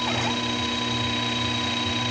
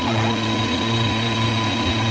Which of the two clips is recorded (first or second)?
first